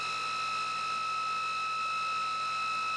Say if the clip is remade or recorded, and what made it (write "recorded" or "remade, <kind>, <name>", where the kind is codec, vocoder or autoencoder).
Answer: recorded